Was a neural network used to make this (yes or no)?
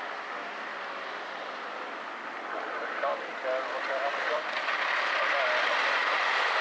yes